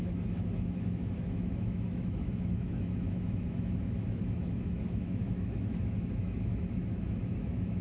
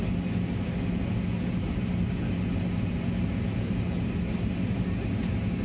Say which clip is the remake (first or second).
first